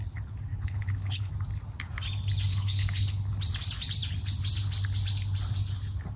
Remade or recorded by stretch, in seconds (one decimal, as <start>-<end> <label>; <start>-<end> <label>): 0.0-0.5 recorded; 0.5-1.3 remade; 1.3-2.5 recorded; 2.5-3.3 remade; 3.3-6.2 recorded